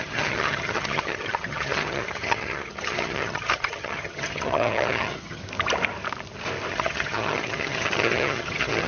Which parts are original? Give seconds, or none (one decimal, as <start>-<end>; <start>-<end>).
5.4-6.7